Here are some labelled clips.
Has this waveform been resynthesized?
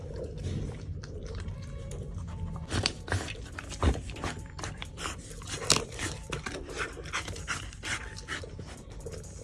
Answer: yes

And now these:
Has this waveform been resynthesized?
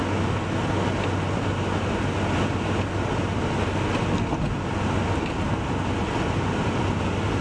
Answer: no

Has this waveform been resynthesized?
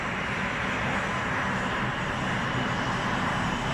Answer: no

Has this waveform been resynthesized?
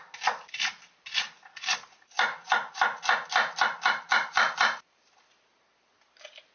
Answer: no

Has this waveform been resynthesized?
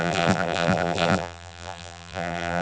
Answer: yes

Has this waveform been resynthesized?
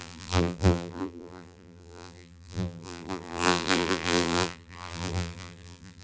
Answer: yes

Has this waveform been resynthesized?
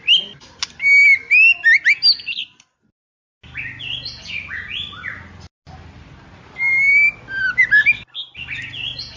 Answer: no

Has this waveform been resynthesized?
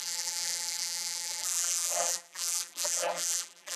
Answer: yes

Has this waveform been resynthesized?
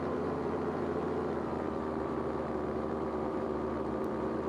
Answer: yes